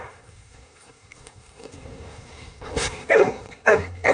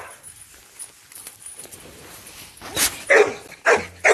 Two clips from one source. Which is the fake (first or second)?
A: first